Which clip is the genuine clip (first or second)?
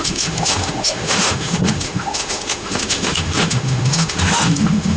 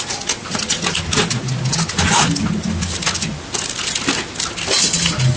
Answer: second